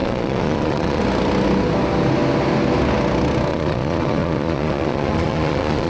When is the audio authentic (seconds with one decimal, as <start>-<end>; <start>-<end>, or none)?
1.0-3.5